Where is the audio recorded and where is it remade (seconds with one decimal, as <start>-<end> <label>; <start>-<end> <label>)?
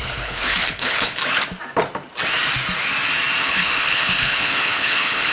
0.0-1.2 remade; 1.2-3.4 recorded; 3.4-5.3 remade